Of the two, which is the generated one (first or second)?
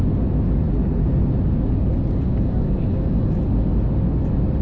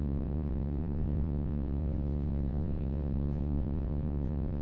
second